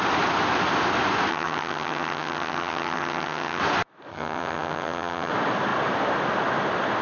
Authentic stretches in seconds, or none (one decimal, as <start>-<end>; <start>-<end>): 0.0-1.3; 3.6-4.1; 5.3-7.0

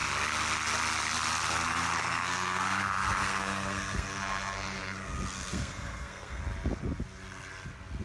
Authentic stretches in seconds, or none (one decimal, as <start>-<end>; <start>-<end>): 0.0-2.0; 6.4-8.0